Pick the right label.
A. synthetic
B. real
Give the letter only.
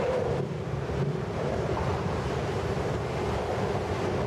B